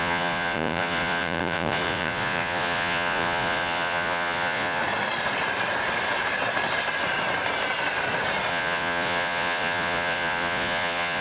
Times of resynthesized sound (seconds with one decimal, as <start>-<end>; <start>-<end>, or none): 0.0-4.8; 8.5-11.2